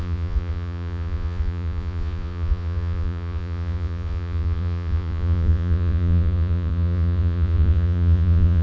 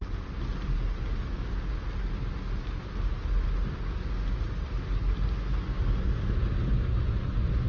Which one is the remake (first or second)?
first